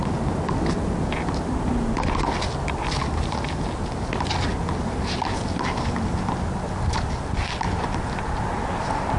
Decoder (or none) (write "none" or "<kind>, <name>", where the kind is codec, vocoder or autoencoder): none